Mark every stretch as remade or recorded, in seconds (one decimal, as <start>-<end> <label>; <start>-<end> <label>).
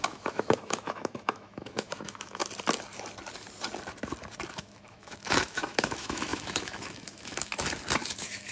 0.0-2.4 remade; 2.4-4.5 recorded; 4.5-7.5 remade; 7.5-8.1 recorded; 8.1-8.5 remade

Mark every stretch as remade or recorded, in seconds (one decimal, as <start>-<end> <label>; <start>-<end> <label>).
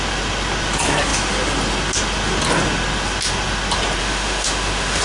0.0-4.0 recorded; 4.0-5.0 remade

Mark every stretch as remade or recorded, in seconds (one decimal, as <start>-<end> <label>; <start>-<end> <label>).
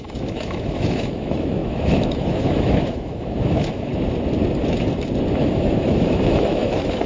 0.0-3.9 remade; 3.9-5.4 recorded; 5.4-7.1 remade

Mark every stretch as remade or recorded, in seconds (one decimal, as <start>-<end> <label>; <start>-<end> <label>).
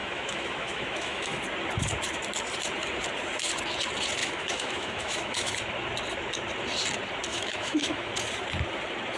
0.0-1.4 remade; 1.4-4.2 recorded; 4.2-5.5 remade; 5.5-7.3 recorded; 7.3-8.1 remade; 8.1-9.2 recorded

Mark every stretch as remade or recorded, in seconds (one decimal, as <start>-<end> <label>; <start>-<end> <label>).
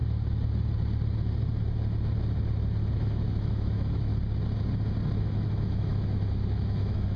0.0-2.9 recorded; 2.9-4.1 remade; 4.1-5.2 recorded; 5.2-7.2 remade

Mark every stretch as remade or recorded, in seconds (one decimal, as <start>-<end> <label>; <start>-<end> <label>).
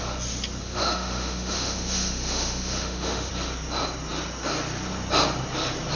0.0-0.6 recorded; 0.6-3.3 remade; 3.3-6.0 recorded